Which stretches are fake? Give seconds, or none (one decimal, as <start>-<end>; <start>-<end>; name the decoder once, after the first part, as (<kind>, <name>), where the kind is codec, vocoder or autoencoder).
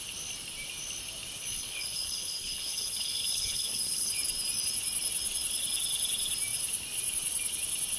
1.4-4.1 (codec, HILCodec)